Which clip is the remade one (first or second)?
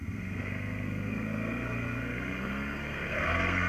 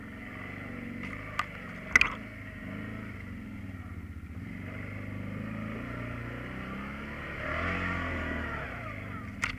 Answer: first